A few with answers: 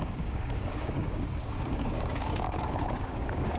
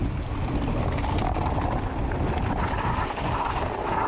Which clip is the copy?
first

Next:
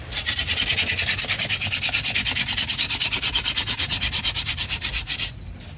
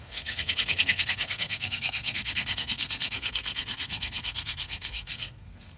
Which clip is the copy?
second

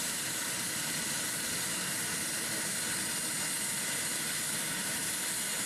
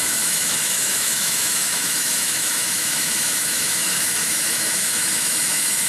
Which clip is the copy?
second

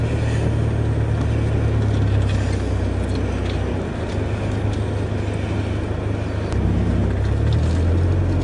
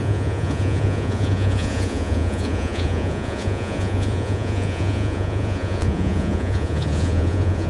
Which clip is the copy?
second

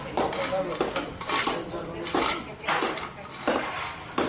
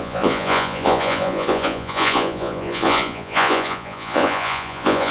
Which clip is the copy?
second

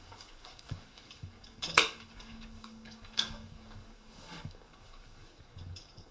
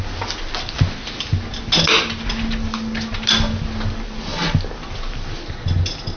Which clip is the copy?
first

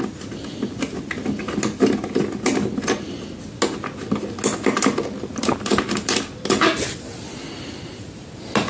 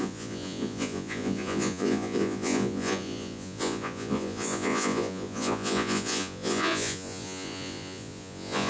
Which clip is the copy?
second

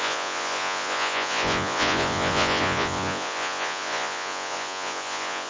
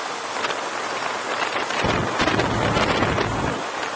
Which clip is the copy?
first